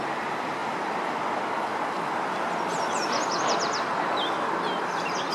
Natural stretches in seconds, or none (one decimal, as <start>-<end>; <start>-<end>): 0.0-0.6; 1.4-5.3